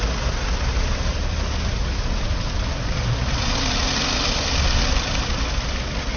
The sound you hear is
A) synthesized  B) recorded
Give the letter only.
B